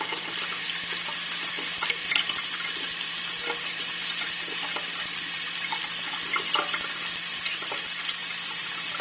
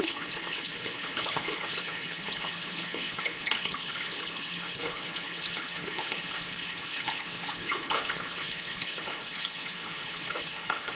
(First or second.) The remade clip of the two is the second